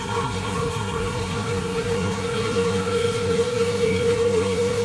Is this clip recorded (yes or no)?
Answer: no